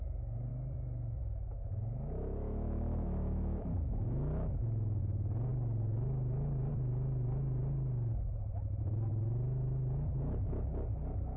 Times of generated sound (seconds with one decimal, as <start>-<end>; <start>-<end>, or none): 0.5-5.0